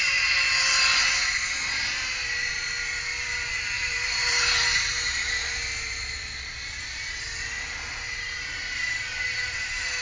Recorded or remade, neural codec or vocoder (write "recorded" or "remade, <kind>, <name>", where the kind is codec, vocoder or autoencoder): remade, vocoder, BigVGAN v2